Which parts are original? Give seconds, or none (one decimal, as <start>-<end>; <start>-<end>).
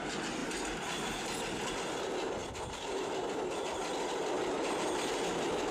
0.0-5.7